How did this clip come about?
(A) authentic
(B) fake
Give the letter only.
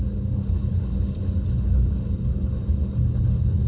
B